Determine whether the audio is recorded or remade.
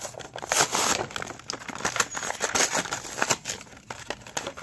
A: recorded